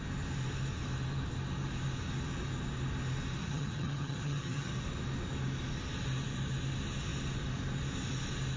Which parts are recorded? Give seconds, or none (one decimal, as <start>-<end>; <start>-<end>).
0.0-3.4; 4.7-8.6